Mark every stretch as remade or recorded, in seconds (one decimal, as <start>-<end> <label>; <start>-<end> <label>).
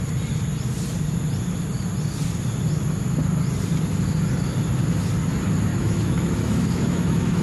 0.0-5.7 recorded; 5.7-7.4 remade